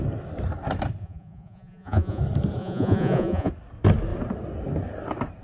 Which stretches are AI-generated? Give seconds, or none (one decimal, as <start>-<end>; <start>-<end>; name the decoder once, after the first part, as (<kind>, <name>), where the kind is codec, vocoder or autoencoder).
1.0-2.2 (vocoder, Vocos); 2.6-3.5